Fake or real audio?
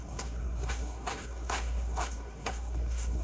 fake